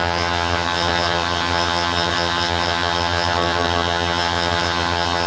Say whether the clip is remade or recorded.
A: remade